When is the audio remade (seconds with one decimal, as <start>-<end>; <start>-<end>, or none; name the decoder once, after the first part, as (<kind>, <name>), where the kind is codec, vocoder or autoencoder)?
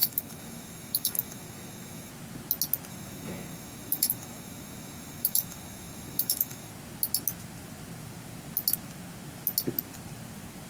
0.0-2.1 (autoencoder, DAC-VAE); 2.9-6.7